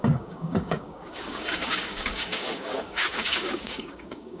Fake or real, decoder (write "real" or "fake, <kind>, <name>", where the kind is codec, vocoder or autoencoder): fake, codec, DAC